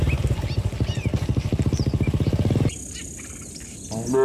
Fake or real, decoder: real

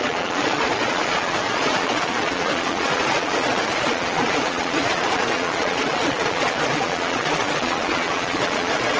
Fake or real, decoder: fake, vocoder, Vocos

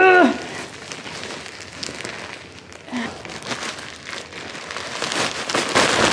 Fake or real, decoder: real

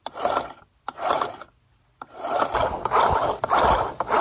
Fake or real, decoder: real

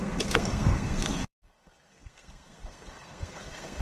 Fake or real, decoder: fake, codec, SNAC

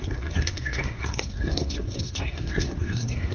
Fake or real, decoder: fake, codec, SNAC